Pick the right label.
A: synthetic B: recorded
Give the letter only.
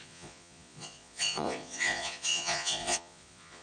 A